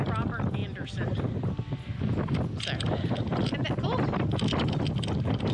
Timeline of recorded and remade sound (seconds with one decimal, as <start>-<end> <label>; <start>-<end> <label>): 0.0-5.5 recorded